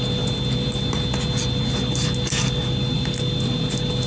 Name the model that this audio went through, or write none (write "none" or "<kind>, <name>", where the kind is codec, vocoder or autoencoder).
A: none